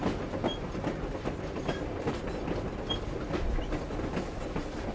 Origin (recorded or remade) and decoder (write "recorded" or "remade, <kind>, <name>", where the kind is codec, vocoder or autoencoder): recorded